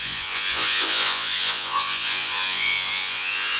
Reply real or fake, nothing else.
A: fake